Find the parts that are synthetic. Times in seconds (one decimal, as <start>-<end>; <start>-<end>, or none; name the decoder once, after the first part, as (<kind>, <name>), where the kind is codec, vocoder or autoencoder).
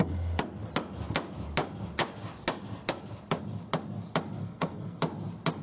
4.4-5.0 (codec, SNAC)